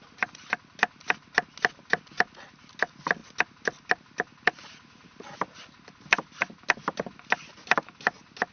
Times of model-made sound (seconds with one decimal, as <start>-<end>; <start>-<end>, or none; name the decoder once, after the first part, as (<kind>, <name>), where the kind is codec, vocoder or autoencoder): none